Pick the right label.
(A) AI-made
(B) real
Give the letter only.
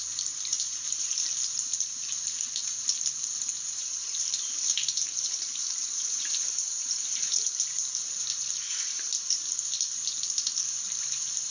A